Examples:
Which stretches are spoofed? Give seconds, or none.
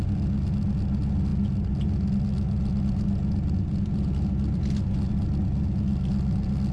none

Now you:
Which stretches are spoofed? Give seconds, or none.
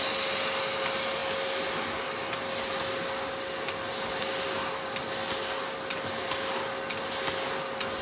none